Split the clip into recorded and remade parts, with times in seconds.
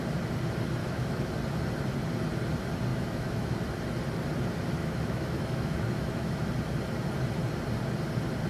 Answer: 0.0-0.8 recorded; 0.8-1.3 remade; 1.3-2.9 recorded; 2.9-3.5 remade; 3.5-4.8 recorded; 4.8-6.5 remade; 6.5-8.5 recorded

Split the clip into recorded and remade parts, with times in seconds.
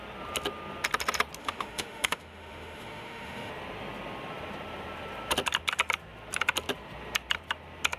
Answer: 0.0-1.4 recorded; 1.4-3.5 remade; 3.5-8.0 recorded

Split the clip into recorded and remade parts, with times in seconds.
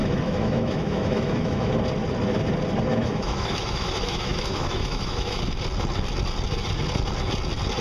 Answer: 0.0-1.7 remade; 1.7-2.9 recorded; 2.9-5.4 remade; 5.4-7.8 recorded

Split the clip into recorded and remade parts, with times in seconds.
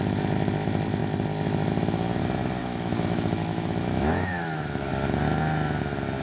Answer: 0.0-2.6 recorded; 2.6-4.9 remade; 4.9-6.2 recorded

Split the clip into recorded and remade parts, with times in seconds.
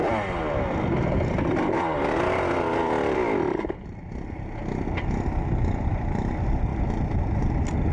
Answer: 0.0-7.9 recorded